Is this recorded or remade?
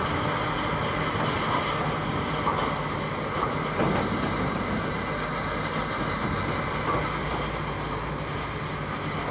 recorded